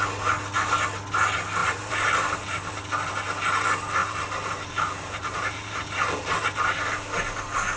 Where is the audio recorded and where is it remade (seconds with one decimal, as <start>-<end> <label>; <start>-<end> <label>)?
0.0-1.6 recorded; 1.6-2.7 remade; 2.7-4.0 recorded; 4.0-6.8 remade; 6.8-7.8 recorded